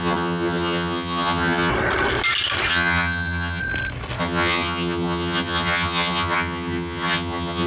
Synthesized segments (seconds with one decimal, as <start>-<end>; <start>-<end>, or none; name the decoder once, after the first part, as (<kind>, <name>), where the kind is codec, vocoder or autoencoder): 0.0-1.7 (vocoder, HiFi-GAN); 2.7-3.6; 4.2-7.7